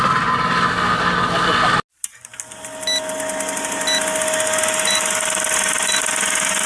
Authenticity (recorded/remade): recorded